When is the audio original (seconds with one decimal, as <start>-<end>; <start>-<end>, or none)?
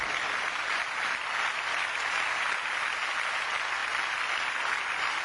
0.0-5.2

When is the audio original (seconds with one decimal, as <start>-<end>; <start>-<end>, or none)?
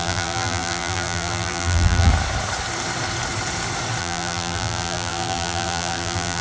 2.1-4.0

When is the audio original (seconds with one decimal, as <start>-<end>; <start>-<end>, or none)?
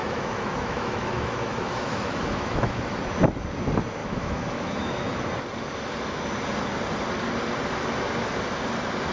3.0-4.0; 5.2-9.1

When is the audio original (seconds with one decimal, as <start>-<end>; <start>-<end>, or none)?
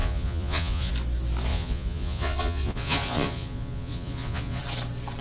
0.9-1.5; 4.6-5.2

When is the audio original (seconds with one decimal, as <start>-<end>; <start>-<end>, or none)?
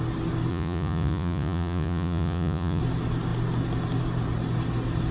0.0-0.5; 2.8-5.1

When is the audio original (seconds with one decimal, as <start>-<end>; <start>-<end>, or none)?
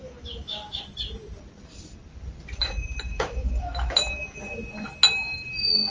0.8-3.1; 4.4-5.9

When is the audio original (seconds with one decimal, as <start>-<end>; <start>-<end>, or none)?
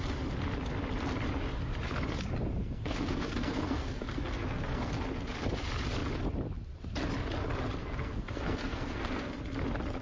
0.0-2.6; 4.9-7.8; 9.4-10.0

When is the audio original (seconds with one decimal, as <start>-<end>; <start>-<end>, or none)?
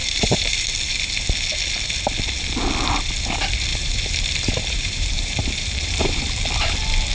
0.7-3.7; 6.4-7.1